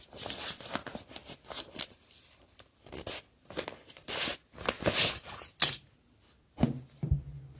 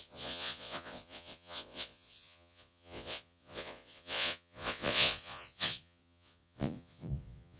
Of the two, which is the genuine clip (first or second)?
first